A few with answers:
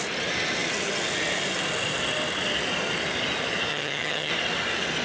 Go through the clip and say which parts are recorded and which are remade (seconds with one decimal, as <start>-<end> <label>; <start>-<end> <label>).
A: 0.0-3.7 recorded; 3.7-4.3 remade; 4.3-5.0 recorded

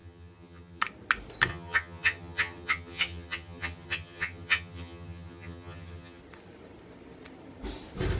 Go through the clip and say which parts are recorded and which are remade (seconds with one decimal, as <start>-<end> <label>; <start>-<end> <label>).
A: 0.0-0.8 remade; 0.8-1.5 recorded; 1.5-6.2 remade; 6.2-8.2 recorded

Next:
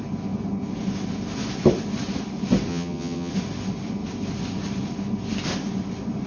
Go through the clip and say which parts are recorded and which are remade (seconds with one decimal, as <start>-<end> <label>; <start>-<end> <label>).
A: 0.0-2.7 recorded; 2.7-3.3 remade; 3.3-6.3 recorded